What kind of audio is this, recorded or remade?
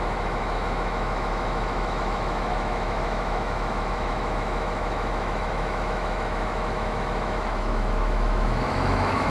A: remade